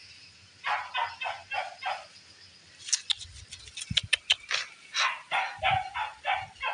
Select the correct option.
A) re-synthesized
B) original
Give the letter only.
B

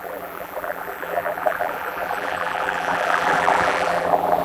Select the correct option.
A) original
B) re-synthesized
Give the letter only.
B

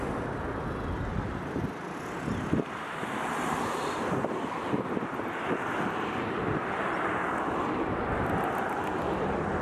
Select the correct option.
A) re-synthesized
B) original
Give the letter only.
B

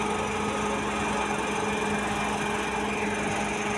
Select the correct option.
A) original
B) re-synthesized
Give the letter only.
A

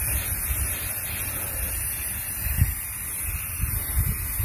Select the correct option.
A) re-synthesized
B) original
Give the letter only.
A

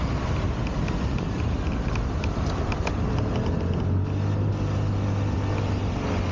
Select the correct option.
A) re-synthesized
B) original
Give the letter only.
B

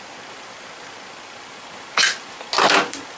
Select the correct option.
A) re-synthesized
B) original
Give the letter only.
B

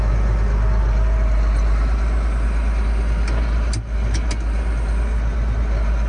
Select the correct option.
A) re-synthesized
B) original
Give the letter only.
B